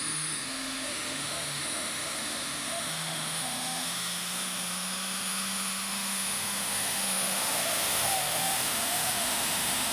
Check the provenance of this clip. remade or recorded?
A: remade